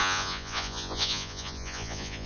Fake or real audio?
fake